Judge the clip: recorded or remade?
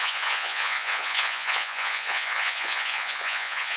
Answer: remade